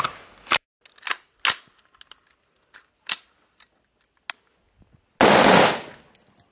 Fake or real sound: real